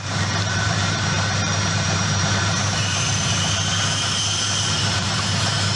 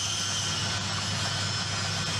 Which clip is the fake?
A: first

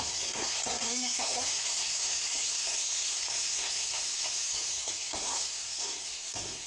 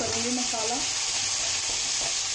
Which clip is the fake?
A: first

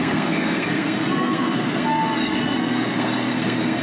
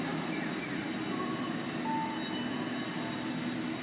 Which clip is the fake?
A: first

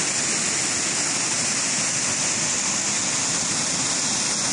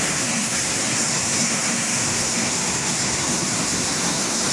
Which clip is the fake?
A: second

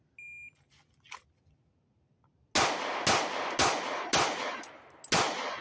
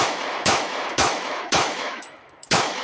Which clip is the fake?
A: second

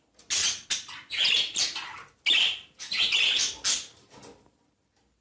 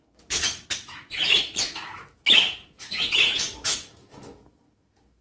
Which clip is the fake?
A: second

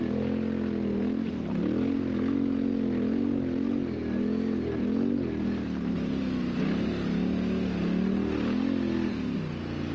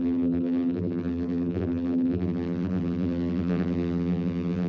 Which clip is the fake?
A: second